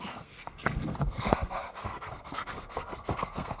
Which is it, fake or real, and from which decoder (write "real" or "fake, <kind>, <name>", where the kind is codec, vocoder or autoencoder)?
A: fake, codec, SNAC